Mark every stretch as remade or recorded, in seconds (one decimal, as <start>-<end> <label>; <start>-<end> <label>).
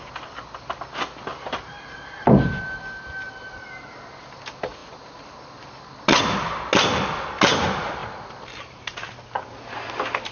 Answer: 0.0-10.3 recorded